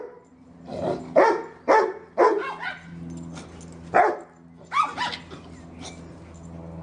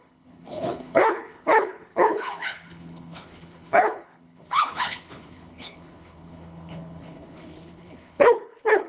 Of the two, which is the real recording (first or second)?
first